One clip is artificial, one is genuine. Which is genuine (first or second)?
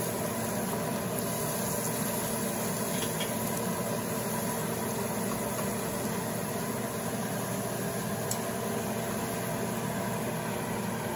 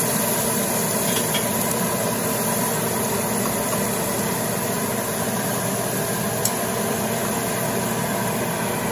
first